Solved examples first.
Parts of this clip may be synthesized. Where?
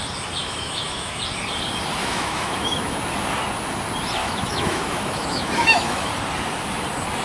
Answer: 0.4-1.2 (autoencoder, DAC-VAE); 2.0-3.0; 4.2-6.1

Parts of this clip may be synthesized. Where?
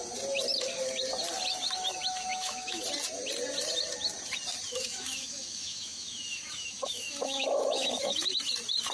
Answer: 2.3-2.8 (autoencoder, DAC-VAE); 4.7-8.3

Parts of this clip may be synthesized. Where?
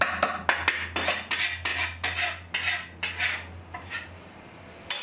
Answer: none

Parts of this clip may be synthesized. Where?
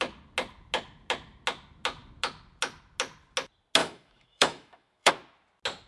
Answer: 3.8-5.1 (autoencoder, DAC-VAE)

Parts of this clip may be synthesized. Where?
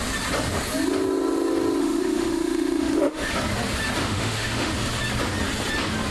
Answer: 1.8-3.3 (autoencoder, DAC-VAE); 4.0-4.7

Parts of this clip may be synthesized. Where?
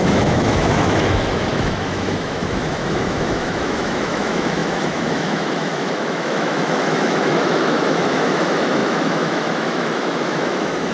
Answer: 0.0-10.9 (autoencoder, DAC-VAE)